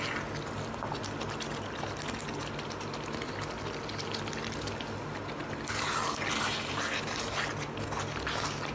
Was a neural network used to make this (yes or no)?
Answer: no